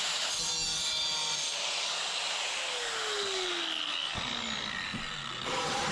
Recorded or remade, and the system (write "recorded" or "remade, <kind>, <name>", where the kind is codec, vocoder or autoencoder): recorded